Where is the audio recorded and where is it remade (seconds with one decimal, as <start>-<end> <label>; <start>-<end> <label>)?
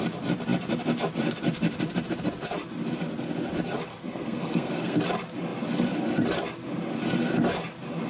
0.0-3.9 recorded; 3.9-5.0 remade; 5.0-8.1 recorded